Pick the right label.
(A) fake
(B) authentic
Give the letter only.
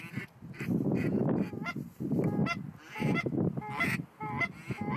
B